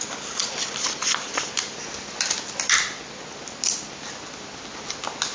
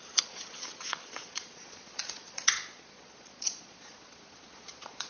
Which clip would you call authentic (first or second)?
first